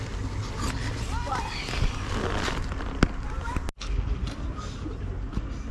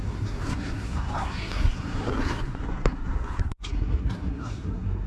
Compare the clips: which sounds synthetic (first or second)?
second